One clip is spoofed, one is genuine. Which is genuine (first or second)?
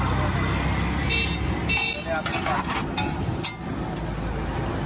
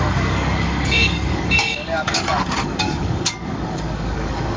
first